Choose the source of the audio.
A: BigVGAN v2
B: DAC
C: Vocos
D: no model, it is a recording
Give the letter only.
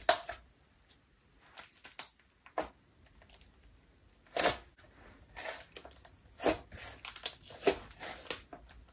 D